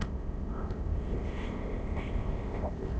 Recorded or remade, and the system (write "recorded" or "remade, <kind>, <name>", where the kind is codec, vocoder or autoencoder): remade, codec, ZipCodec